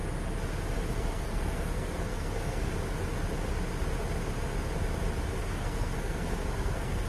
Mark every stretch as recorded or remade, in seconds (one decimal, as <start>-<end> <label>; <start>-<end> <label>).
0.0-0.9 recorded; 0.9-2.7 remade; 2.7-5.4 recorded; 5.4-7.1 remade